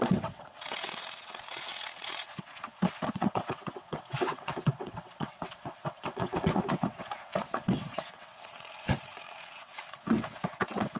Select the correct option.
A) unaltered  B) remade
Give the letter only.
B